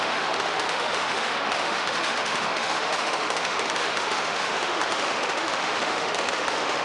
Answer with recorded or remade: remade